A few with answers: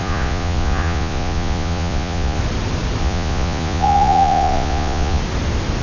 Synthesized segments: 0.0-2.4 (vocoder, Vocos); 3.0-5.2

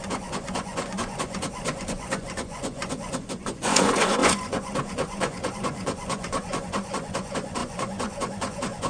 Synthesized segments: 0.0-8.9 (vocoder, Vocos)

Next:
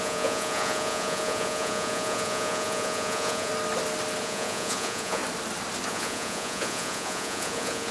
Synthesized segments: 0.0-3.5 (vocoder, Vocos); 4.2-5.2; 5.9-7.9

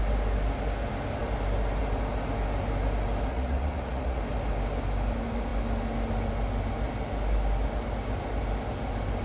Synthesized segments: 3.3-4.2 (vocoder, Vocos)